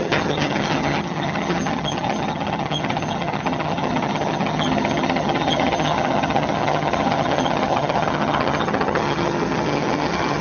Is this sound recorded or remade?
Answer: remade